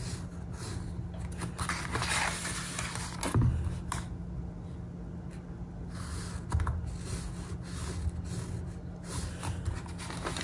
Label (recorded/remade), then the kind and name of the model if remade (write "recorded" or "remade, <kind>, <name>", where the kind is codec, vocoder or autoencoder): recorded